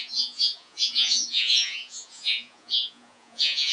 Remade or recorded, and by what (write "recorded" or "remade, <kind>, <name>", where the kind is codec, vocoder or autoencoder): remade, vocoder, Vocos